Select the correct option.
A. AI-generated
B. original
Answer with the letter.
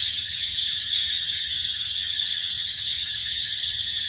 A